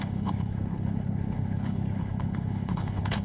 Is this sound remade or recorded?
remade